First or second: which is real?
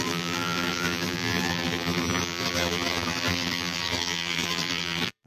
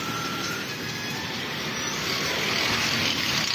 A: second